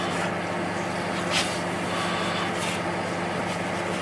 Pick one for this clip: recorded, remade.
recorded